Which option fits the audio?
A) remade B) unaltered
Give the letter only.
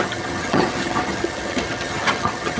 A